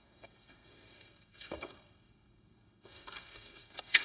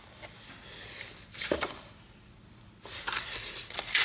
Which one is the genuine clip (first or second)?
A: second